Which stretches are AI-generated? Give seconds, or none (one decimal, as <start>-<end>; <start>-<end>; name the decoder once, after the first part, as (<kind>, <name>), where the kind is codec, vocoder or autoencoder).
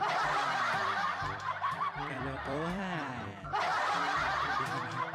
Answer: 0.8-3.2 (vocoder, BigVGAN v2); 3.7-4.6